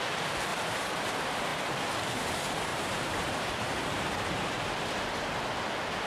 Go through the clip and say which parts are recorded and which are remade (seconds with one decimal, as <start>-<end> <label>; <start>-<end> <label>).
0.0-0.5 recorded; 0.5-1.1 remade; 1.1-2.7 recorded; 2.7-4.8 remade; 4.8-6.1 recorded